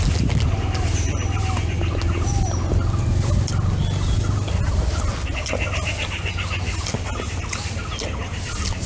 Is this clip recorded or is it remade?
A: recorded